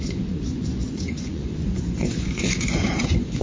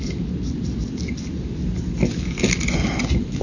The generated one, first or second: first